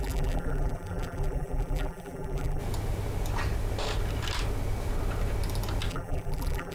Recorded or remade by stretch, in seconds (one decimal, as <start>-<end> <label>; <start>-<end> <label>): 0.0-2.6 remade; 2.6-5.9 recorded; 5.9-6.7 remade